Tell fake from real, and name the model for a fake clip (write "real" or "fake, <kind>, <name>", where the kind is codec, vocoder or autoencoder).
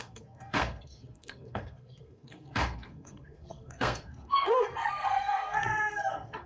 fake, codec, SNAC